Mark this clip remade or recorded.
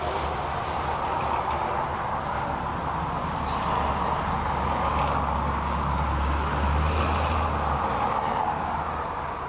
recorded